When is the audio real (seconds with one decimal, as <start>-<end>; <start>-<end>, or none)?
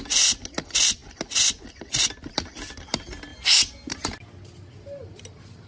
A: 0.0-5.7